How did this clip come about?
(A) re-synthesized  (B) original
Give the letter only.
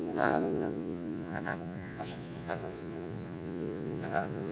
A